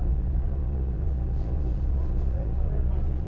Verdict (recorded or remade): remade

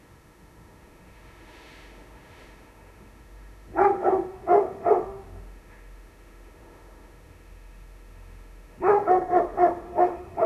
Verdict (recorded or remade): remade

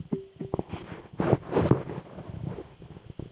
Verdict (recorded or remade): recorded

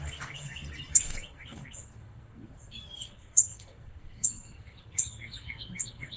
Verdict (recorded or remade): remade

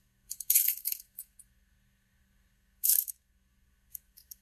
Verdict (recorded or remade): remade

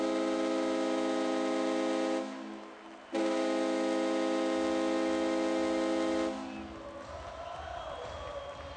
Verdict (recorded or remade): recorded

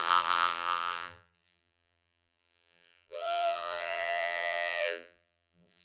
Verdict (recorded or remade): remade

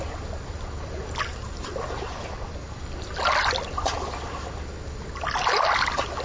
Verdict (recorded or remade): recorded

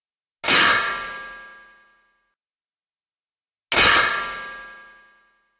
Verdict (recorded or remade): recorded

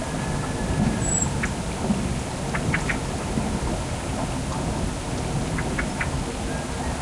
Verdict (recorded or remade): recorded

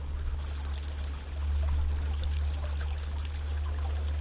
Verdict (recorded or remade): recorded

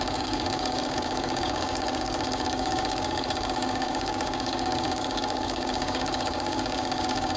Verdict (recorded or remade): remade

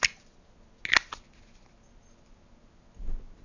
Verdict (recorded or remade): recorded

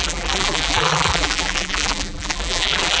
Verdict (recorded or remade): remade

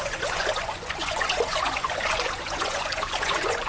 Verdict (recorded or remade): remade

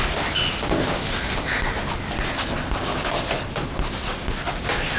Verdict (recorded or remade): recorded